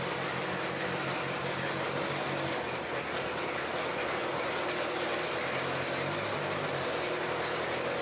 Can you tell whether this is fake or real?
real